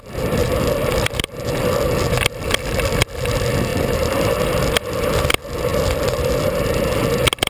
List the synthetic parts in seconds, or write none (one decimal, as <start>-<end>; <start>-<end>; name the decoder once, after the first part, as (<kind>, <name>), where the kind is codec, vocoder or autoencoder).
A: 0.4-1.6 (vocoder, BigVGAN v2); 3.7-4.6; 5.7-6.3